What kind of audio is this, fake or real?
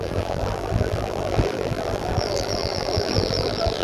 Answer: fake